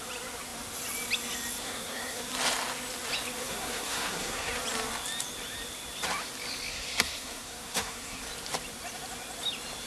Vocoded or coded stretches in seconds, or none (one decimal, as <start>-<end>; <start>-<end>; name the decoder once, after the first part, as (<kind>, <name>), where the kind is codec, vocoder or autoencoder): 1.6-2.2 (codec, SNAC); 3.4-4.5; 6.7-8.2